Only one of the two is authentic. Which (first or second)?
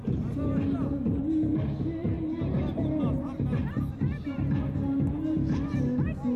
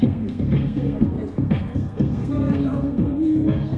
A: first